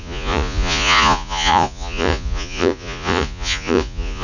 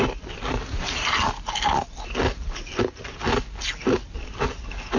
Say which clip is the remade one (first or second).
first